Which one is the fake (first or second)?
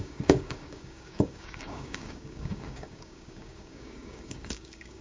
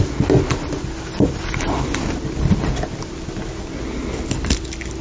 first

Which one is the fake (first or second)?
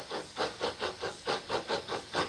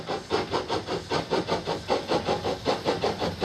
first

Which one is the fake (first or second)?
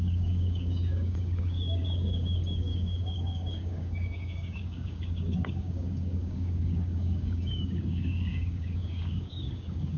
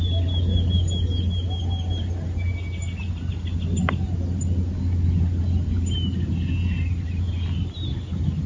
first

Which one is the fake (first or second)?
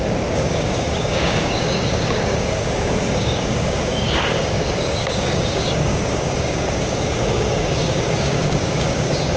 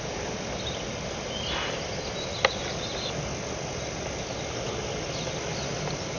first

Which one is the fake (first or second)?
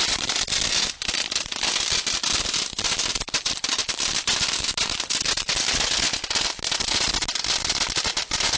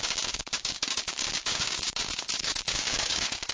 second